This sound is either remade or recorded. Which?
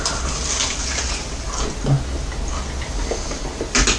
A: recorded